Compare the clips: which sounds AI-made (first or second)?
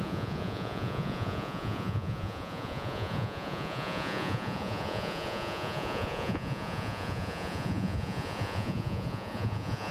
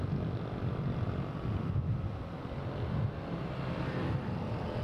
first